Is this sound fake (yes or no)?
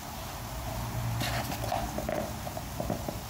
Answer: no